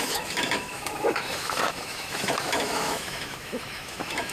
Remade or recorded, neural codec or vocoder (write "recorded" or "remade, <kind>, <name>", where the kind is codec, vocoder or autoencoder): remade, autoencoder, DAC-VAE